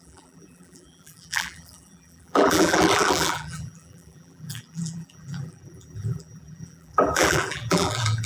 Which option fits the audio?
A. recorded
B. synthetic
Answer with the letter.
B